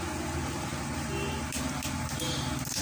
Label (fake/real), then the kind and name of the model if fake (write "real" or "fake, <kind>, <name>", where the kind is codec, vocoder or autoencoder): real